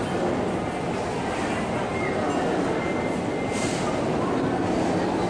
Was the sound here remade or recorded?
recorded